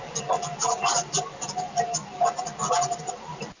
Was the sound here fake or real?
fake